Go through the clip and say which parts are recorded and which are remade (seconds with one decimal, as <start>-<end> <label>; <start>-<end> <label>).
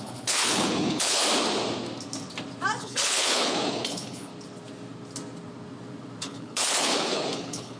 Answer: 0.0-1.2 remade; 1.2-2.8 recorded; 2.8-4.3 remade; 4.3-6.2 recorded; 6.2-7.8 remade